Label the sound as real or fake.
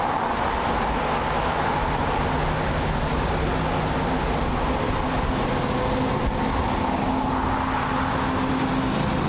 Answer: real